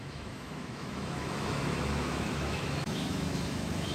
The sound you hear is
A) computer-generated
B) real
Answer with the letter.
A